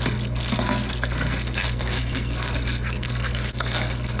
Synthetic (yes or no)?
yes